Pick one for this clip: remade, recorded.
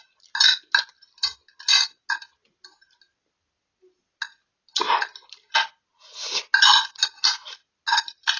recorded